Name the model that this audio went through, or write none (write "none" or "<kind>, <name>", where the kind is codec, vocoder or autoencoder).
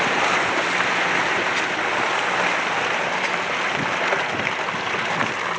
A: none